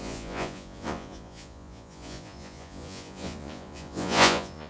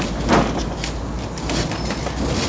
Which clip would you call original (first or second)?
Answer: second